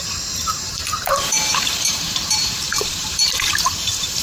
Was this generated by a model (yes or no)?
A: yes